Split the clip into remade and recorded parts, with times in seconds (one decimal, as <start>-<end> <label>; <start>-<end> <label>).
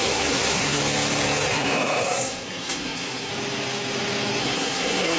0.0-0.8 remade; 0.8-1.5 recorded; 1.5-3.3 remade; 3.3-4.4 recorded; 4.4-5.2 remade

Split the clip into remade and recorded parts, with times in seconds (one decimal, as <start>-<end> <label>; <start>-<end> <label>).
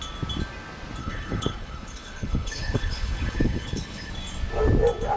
0.0-1.0 recorded; 1.0-4.1 remade; 4.1-5.2 recorded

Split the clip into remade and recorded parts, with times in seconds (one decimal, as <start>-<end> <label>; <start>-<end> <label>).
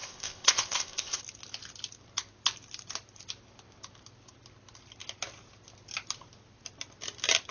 0.0-1.2 remade; 1.2-7.5 recorded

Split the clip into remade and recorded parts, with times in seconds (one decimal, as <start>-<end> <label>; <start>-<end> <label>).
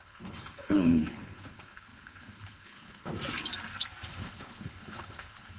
0.0-3.1 remade; 3.1-4.1 recorded; 4.1-5.6 remade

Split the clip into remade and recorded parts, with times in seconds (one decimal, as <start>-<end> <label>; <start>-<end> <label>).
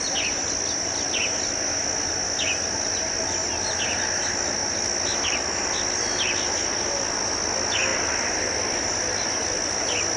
0.0-10.2 recorded